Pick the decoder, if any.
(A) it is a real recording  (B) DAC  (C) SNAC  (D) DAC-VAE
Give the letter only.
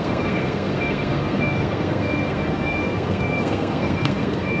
C